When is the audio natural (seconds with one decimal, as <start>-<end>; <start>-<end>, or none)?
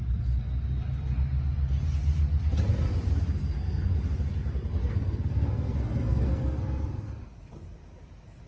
0.0-3.4; 3.9-4.8; 7.3-8.5